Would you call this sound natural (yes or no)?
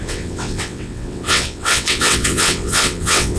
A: no